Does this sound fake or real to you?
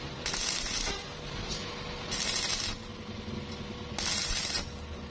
real